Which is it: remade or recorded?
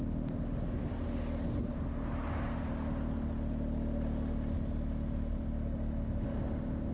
recorded